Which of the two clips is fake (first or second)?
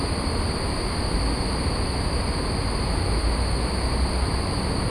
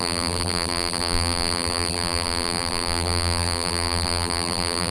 second